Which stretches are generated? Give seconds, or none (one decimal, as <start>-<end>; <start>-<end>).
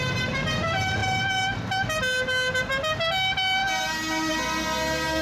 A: none